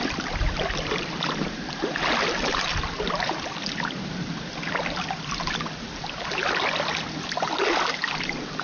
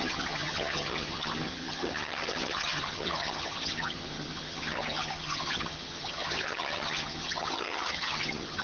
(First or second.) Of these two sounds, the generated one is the second